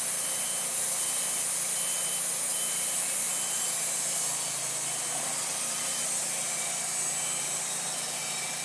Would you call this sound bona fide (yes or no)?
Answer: yes